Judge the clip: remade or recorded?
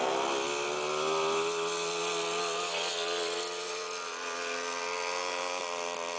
recorded